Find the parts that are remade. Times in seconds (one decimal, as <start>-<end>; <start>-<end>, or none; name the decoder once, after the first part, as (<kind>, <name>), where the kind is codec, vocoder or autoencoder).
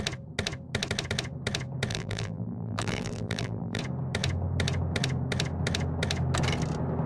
1.9-3.8 (vocoder, BigVGAN v2)